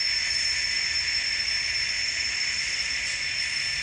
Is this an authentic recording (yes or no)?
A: yes